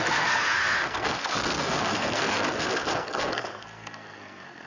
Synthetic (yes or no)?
yes